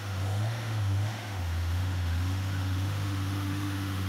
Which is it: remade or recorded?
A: remade